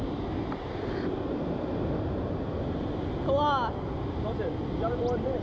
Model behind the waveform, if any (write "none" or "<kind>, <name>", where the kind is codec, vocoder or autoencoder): none